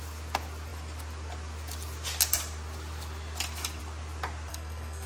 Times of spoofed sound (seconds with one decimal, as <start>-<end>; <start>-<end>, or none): 4.5-5.1